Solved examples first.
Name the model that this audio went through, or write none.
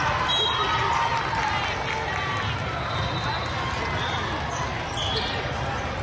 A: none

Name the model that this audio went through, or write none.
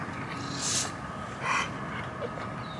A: none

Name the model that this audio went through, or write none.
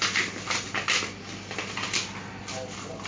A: none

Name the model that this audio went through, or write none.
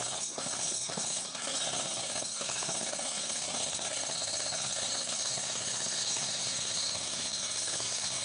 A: codec, SNAC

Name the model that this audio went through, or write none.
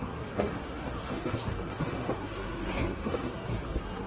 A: codec, SNAC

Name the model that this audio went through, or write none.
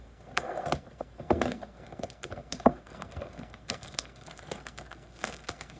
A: codec, SNAC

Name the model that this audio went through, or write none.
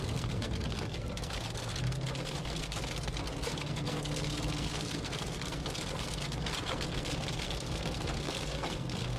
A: codec, SNAC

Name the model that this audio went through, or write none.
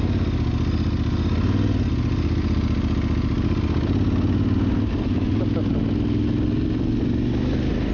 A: none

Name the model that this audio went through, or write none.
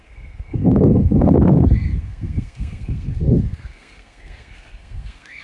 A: codec, SNAC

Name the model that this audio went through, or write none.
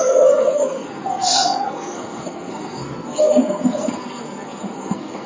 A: codec, SNAC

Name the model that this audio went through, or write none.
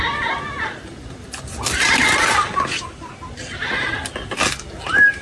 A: none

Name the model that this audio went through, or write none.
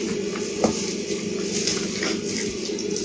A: none